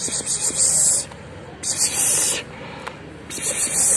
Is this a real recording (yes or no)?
yes